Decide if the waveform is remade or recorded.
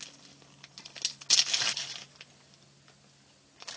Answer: recorded